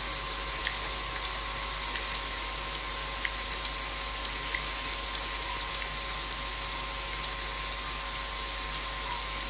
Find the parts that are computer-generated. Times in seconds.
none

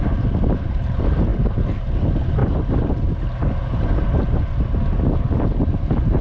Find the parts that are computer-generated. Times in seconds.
none